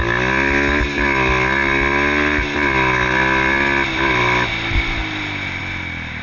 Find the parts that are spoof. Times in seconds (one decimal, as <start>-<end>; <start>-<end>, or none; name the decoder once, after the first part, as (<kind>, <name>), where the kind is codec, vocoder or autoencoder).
none

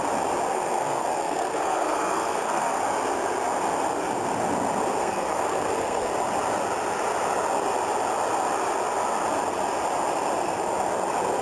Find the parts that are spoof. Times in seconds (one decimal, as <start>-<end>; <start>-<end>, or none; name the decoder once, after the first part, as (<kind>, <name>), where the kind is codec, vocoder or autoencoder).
0.5-2.8 (codec, SNAC); 5.0-6.1

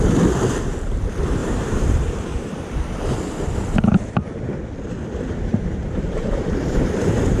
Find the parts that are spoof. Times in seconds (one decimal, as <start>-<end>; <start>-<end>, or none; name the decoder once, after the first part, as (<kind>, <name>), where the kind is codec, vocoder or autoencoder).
1.4-3.0 (vocoder, BigVGAN v2); 5.5-7.4

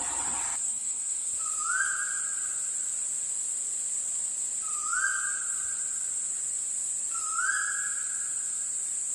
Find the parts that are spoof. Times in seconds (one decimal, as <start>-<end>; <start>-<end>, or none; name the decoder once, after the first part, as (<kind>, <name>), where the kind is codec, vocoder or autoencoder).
0.6-1.3 (codec, SNAC)

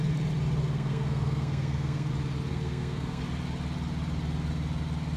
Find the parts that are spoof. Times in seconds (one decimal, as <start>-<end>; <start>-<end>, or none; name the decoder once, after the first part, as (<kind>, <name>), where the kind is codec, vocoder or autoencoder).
0.6-2.1 (codec, SNAC); 2.5-3.2